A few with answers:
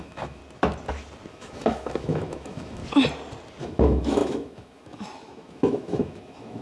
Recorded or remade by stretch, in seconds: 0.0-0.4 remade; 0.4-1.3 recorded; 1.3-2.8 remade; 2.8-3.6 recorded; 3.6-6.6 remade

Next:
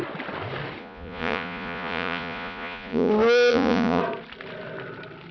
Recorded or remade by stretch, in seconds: 0.0-0.8 recorded; 0.8-3.1 remade; 3.1-3.5 recorded; 3.5-4.0 remade; 4.0-5.3 recorded

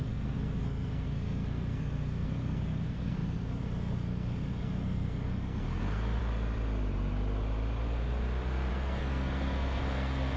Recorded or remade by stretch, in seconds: 0.0-6.2 remade; 6.2-8.7 recorded; 8.7-10.4 remade

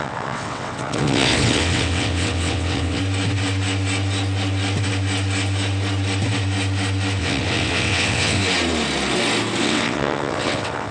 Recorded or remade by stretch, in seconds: 0.0-3.0 remade; 3.0-7.2 recorded; 7.2-8.4 remade; 8.4-9.6 recorded; 9.6-10.9 remade

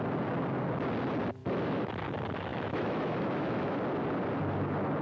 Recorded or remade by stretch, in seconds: 0.0-1.4 recorded; 1.4-1.9 remade; 1.9-2.5 recorded; 2.5-3.8 remade; 3.8-5.0 recorded

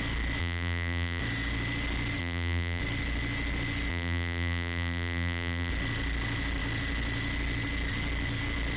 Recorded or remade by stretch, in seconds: 0.0-0.4 recorded; 0.4-1.2 remade; 1.2-2.2 recorded; 2.2-2.8 remade; 2.8-3.9 recorded; 3.9-5.7 remade; 5.7-8.8 recorded

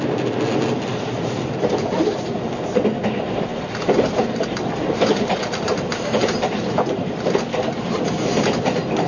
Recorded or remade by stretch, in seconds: 0.0-0.9 recorded; 0.9-2.8 remade; 2.8-3.5 recorded; 3.5-7.3 remade; 7.3-9.1 recorded

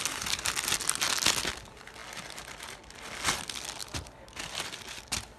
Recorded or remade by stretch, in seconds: 0.0-5.4 recorded